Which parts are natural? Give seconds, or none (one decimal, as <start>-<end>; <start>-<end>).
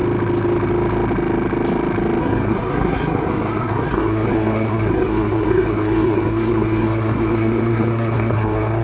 0.0-2.2